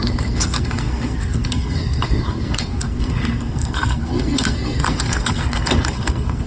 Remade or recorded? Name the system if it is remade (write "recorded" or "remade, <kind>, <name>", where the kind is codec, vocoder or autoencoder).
remade, codec, SNAC